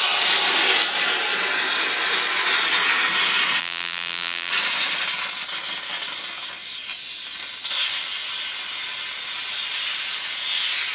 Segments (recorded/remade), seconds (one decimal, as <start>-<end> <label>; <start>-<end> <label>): 0.0-3.6 recorded; 3.6-4.5 remade; 4.5-10.9 recorded